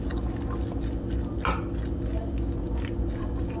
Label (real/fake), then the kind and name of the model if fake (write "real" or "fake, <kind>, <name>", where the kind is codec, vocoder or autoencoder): real